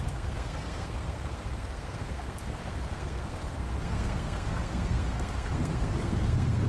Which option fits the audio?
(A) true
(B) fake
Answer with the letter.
B